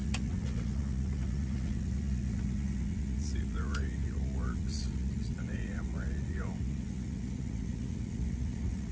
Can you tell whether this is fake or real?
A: fake